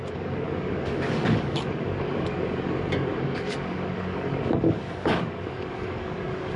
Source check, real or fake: fake